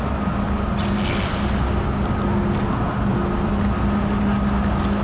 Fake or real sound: real